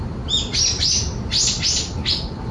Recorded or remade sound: recorded